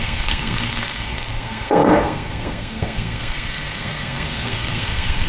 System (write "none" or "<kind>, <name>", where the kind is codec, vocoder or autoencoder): codec, SNAC